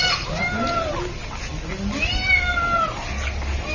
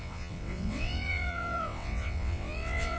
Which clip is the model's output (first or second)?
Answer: second